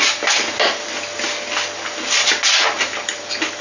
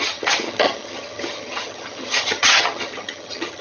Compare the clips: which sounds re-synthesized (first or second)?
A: second